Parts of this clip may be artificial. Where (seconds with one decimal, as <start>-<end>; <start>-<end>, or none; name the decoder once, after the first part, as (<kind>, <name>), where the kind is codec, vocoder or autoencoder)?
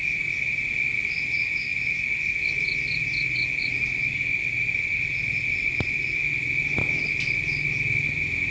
none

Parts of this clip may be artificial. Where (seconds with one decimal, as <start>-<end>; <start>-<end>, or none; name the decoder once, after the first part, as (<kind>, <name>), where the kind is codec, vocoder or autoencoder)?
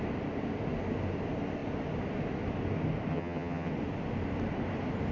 3.1-3.7 (vocoder, HiFi-GAN)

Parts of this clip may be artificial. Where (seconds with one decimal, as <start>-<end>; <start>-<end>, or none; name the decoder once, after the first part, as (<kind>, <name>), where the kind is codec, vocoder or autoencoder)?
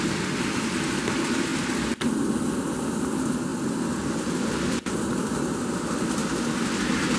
none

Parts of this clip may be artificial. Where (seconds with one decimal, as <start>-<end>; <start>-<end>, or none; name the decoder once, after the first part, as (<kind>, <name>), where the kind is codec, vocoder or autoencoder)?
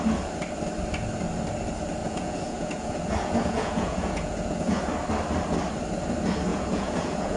2.0-4.8 (vocoder, Vocos); 6.5-7.4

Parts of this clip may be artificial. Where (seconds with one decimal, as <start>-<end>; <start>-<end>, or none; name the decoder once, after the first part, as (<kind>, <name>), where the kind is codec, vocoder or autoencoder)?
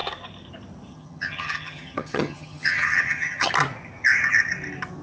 0.9-3.5 (vocoder, HiFi-GAN)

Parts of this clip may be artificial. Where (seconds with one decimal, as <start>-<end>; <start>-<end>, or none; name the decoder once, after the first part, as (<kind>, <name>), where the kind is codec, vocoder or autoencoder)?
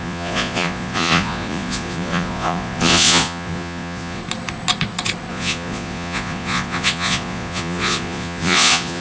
0.0-4.2 (vocoder, Vocos); 5.3-9.0